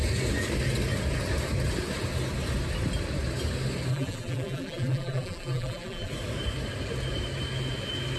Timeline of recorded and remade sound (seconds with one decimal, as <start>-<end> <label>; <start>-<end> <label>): 0.0-3.9 recorded; 3.9-6.1 remade; 6.1-8.2 recorded